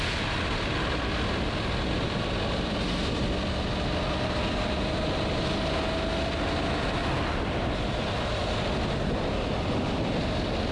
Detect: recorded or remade recorded